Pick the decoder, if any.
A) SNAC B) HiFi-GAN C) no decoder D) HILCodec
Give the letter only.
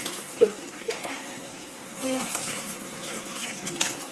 A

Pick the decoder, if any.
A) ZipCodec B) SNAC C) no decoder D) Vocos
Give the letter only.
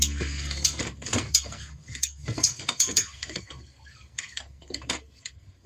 B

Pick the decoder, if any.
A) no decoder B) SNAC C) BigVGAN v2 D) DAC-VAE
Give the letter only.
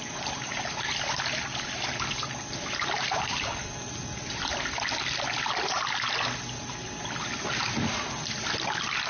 A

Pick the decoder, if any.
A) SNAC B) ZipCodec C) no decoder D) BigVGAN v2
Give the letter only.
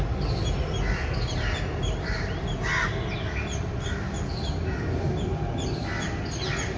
C